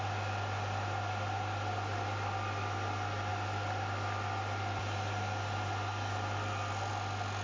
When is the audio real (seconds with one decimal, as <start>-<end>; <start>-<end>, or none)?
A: 0.0-7.4